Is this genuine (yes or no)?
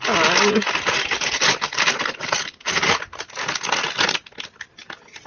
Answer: yes